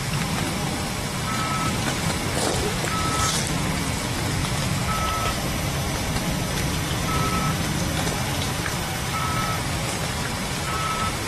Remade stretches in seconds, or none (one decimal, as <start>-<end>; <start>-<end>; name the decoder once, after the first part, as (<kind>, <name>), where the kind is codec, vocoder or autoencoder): none